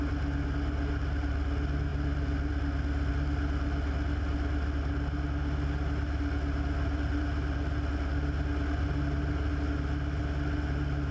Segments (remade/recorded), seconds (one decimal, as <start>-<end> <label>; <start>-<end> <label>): 0.0-11.1 recorded